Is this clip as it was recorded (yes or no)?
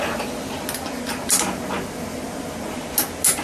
yes